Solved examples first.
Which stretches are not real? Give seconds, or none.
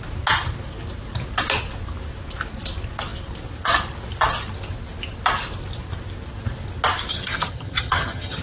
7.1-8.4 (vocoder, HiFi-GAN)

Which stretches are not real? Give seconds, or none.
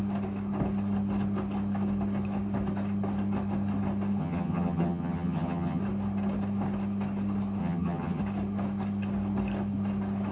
4.2-5.8 (vocoder, HiFi-GAN); 7.6-8.2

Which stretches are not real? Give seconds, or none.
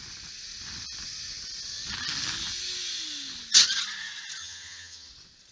4.4-5.1 (vocoder, HiFi-GAN)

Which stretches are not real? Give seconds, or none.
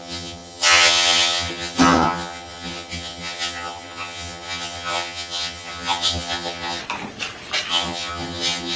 0.0-6.8 (vocoder, HiFi-GAN); 7.7-8.8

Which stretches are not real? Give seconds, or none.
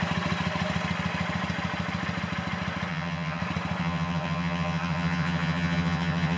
2.9-3.4 (vocoder, HiFi-GAN); 3.8-6.4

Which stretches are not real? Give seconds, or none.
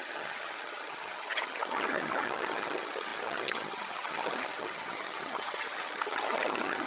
0.0-6.9 (vocoder, HiFi-GAN)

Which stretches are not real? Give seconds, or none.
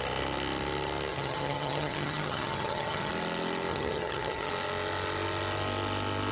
1.1-3.1 (vocoder, HiFi-GAN); 3.7-4.5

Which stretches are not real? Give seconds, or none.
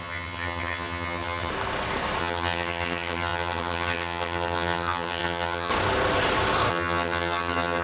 0.0-1.5 (vocoder, HiFi-GAN); 2.2-5.7; 6.7-7.8